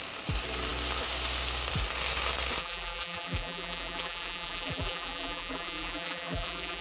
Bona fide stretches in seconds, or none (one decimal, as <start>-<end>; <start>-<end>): 0.0-2.6